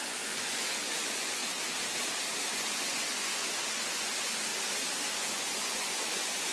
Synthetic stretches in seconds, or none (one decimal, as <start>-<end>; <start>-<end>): 0.0-1.4; 2.5-4.5; 5.1-6.5